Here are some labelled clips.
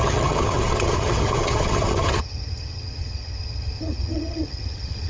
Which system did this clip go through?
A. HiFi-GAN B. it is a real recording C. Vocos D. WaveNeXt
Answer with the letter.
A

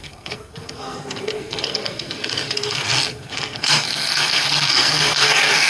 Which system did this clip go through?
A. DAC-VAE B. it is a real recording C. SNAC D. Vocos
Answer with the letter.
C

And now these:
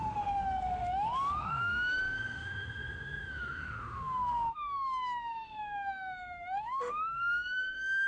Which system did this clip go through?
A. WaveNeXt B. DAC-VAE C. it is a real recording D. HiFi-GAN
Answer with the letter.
B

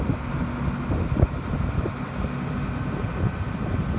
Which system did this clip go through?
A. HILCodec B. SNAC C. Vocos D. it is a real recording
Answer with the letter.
D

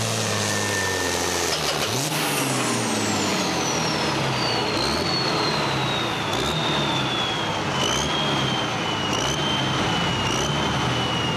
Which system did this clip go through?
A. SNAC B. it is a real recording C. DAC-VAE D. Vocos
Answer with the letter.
B